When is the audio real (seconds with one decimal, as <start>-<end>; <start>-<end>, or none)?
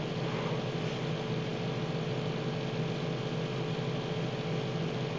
0.0-5.2